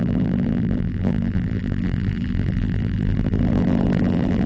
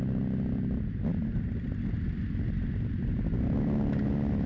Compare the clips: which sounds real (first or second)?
second